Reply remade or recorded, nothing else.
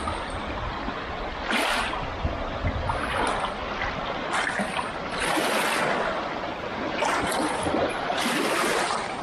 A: recorded